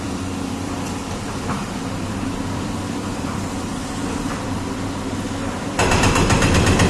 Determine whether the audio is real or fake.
fake